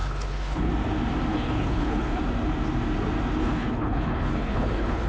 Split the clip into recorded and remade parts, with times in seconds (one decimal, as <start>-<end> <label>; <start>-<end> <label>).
0.0-0.7 remade; 0.7-1.3 recorded; 1.3-2.2 remade; 2.2-3.4 recorded; 3.4-5.1 remade